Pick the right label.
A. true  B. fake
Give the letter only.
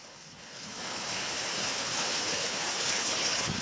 B